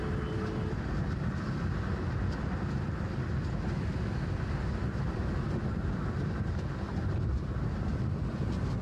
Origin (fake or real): real